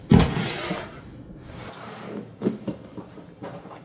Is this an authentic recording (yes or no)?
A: yes